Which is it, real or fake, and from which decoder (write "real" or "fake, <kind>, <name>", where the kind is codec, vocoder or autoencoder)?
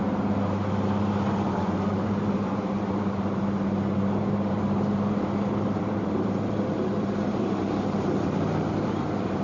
fake, vocoder, BigVGAN v2